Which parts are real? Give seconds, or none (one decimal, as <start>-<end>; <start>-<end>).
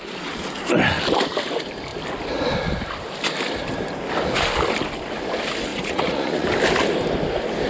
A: 0.0-5.7; 6.5-7.7